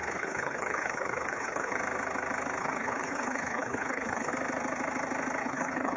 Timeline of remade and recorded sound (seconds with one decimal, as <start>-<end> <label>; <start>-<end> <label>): 0.0-1.8 remade; 1.8-2.6 recorded; 2.6-4.3 remade; 4.3-5.4 recorded; 5.4-6.0 remade